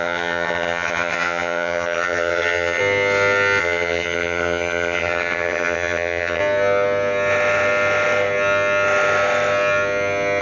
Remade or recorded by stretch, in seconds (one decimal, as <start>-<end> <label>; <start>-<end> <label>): 0.0-2.8 remade; 2.8-3.6 recorded; 3.6-6.4 remade; 6.4-10.4 recorded